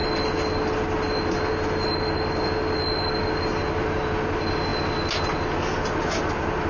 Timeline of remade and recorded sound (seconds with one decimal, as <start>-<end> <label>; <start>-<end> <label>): 0.0-6.7 recorded